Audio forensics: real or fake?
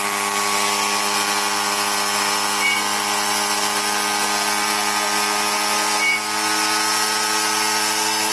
real